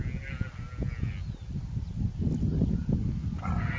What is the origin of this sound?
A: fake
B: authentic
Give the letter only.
B